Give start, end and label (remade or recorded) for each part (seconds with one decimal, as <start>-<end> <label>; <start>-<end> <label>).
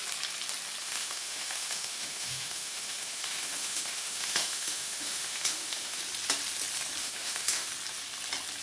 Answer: 0.0-0.8 recorded; 0.8-6.0 remade; 6.0-7.0 recorded; 7.0-7.7 remade; 7.7-8.6 recorded